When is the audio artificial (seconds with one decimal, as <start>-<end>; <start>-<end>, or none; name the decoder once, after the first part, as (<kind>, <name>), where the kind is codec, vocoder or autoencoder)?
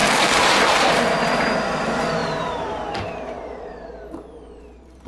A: 0.0-1.2 (vocoder, BigVGAN v2); 2.2-5.1